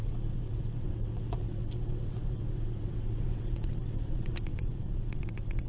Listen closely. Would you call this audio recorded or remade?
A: remade